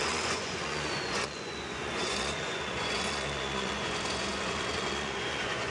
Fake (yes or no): yes